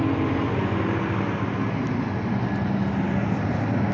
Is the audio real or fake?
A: real